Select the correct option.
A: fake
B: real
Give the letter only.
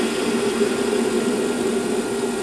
B